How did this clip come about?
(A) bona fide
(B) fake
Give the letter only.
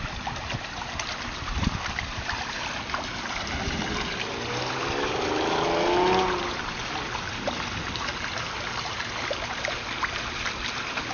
A